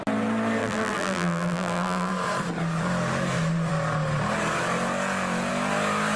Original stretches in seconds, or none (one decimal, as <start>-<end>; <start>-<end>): 0.0-0.6; 2.1-6.2